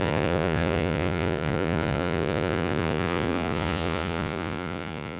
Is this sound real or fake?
fake